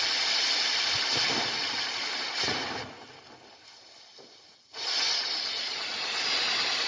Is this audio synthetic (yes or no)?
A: no